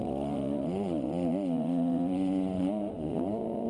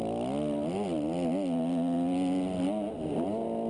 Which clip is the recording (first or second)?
second